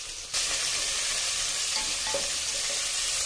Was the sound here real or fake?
real